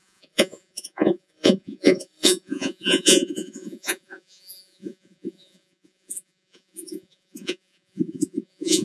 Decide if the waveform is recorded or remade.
remade